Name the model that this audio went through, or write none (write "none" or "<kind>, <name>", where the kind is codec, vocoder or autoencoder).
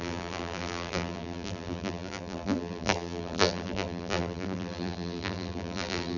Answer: vocoder, BigVGAN v2